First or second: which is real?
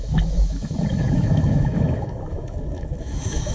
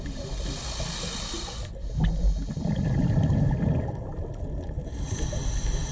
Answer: second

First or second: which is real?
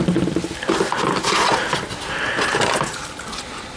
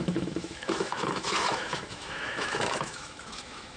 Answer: first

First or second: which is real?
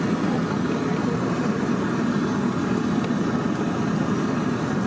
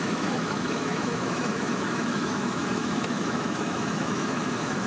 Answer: first